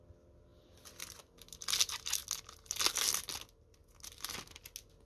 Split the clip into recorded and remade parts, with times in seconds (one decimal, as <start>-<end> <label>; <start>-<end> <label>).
0.0-5.1 recorded